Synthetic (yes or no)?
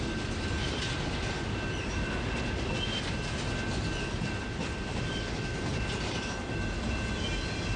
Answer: no